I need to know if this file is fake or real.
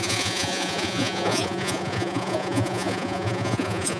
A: fake